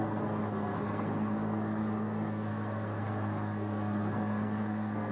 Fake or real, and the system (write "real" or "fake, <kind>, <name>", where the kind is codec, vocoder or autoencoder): fake, codec, SNAC